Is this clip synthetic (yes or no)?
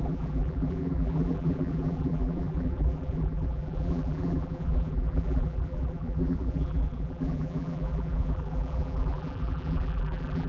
yes